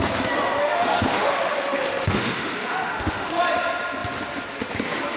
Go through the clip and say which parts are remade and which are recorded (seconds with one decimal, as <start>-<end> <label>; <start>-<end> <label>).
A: 0.0-0.6 recorded; 0.6-3.4 remade; 3.4-5.2 recorded